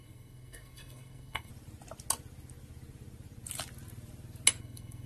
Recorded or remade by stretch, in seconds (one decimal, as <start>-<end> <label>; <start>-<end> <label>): 0.0-1.5 remade; 1.5-4.6 recorded; 4.6-5.1 remade